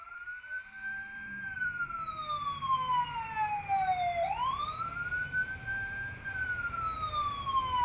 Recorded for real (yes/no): no